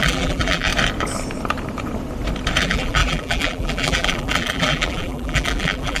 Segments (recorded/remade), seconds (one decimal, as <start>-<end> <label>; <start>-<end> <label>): 0.0-0.7 remade; 0.7-2.6 recorded; 2.6-6.0 remade